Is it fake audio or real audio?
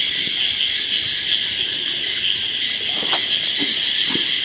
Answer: real